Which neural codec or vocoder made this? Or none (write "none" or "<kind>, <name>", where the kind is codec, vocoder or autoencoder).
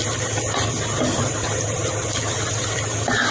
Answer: none